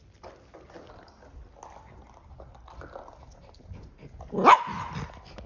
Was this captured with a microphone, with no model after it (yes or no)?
yes